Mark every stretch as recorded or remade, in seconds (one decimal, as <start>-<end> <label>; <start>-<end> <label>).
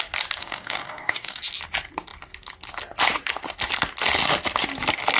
0.0-0.4 recorded; 0.4-1.4 remade; 1.4-5.2 recorded